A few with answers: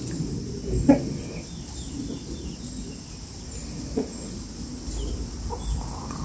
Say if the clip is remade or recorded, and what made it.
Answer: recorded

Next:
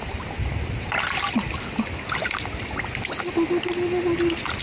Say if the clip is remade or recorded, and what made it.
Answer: recorded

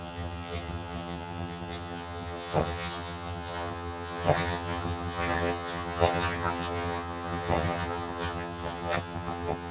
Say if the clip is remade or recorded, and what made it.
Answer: remade, vocoder, HiFi-GAN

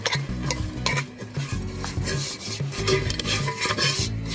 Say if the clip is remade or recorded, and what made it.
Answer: recorded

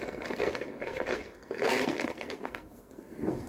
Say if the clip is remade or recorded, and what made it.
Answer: remade, codec, SNAC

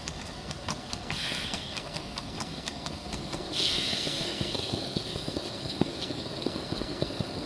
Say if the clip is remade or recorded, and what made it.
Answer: remade, codec, SNAC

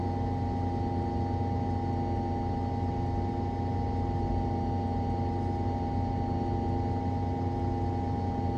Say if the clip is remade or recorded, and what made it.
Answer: recorded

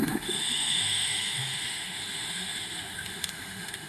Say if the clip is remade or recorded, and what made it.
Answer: remade, autoencoder, DAC-VAE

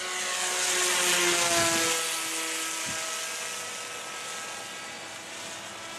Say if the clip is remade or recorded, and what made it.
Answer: recorded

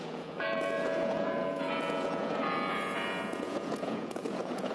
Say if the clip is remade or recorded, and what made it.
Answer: remade, vocoder, Vocos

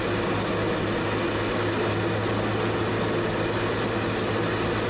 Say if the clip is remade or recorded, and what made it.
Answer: recorded